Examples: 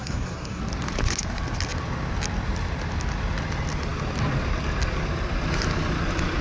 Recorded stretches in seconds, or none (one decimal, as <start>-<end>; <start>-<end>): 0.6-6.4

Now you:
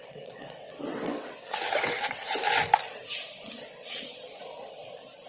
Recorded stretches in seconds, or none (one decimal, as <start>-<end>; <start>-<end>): 2.3-3.5; 4.1-5.3

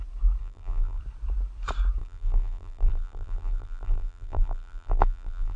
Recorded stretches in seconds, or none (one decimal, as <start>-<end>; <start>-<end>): 0.0-0.4; 1.0-2.0

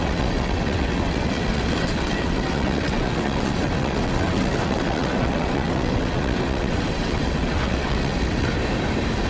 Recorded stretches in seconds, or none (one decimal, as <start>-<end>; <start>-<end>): 8.5-9.3